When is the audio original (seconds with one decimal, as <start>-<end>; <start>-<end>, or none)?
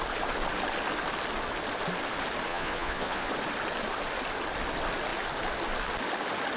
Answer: 0.0-2.5; 3.3-6.6